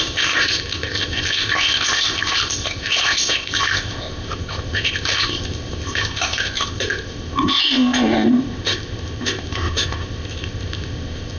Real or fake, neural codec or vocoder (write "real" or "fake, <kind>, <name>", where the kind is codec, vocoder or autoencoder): fake, codec, ZipCodec